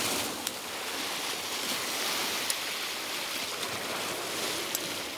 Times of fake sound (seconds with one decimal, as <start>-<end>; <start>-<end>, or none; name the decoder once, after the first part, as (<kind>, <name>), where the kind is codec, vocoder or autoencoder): none